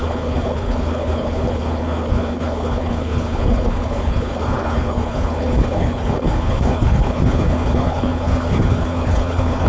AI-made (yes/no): yes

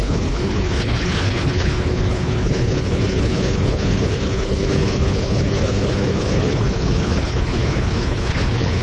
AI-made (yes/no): yes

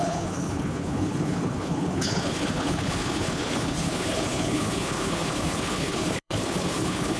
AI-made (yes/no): yes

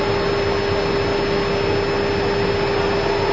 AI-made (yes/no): no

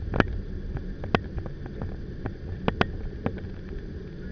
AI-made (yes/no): no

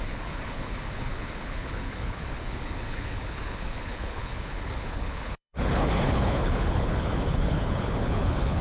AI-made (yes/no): yes